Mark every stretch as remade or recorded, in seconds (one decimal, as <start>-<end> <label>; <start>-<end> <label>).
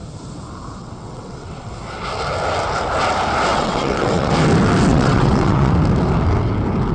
0.0-0.8 recorded; 0.8-1.7 remade; 1.7-3.5 recorded; 3.5-4.3 remade; 4.3-4.9 recorded; 4.9-5.7 remade; 5.7-6.9 recorded